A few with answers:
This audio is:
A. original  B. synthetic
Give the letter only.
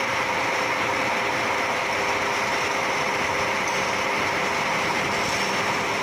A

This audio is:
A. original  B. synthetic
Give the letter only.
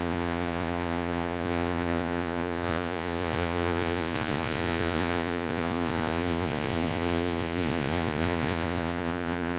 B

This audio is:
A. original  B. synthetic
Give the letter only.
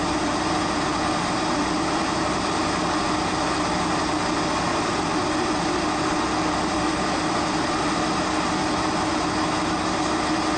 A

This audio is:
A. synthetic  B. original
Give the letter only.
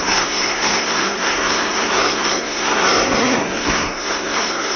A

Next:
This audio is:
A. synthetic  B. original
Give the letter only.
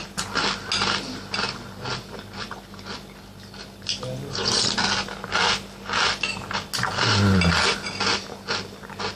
B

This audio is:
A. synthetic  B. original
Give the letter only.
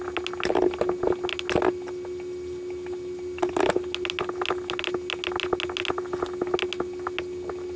B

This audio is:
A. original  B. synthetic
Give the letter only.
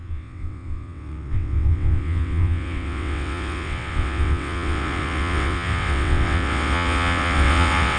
B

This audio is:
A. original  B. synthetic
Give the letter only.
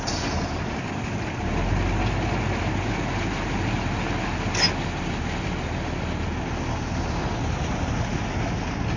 A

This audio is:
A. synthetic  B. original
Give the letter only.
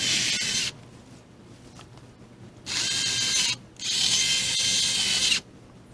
B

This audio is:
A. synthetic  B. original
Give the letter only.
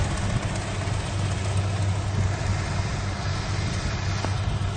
B